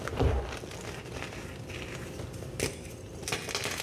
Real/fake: real